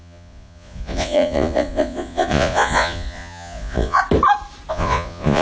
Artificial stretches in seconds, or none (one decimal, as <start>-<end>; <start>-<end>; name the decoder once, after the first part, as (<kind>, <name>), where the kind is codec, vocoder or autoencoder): 0.0-4.0 (vocoder, Vocos); 4.7-5.4